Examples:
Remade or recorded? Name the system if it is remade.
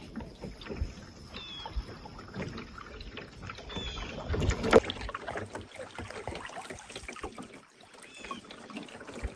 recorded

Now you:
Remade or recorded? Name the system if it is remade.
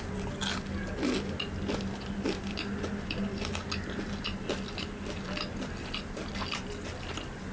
recorded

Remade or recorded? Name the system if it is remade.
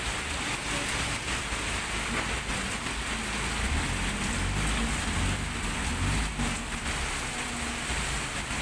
recorded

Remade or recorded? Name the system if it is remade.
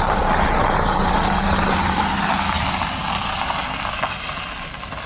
recorded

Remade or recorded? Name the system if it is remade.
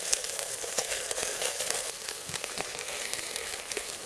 remade, codec, SNAC